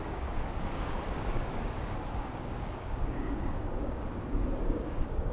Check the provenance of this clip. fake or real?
fake